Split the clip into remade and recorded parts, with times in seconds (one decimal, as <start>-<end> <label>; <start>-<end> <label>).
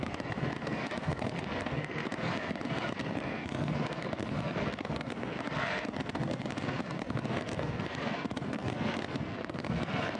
0.0-10.2 remade